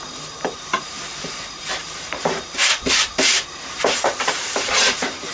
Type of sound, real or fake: fake